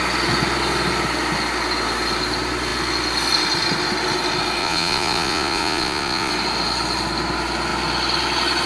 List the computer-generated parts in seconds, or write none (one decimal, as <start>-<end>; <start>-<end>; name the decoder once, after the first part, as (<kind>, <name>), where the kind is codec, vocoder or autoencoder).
4.6-6.3 (vocoder, Vocos)

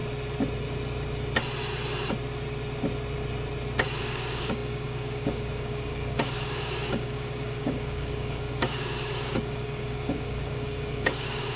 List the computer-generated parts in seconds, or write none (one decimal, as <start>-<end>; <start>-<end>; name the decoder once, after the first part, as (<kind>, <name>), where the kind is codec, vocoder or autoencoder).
4.0-11.6 (codec, DAC)

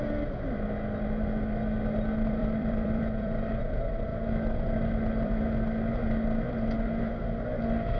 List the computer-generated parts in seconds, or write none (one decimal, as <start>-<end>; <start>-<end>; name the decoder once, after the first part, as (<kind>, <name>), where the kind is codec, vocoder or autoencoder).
2.4-3.6 (vocoder, BigVGAN v2); 4.1-5.4

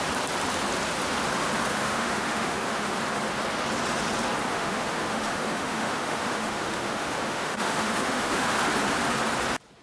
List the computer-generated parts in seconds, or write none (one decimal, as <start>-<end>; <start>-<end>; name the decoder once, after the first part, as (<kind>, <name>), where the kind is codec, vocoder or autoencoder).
1.7-3.0 (autoencoder, DAC-VAE); 4.5-8.6